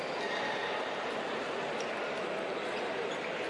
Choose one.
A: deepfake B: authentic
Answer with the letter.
B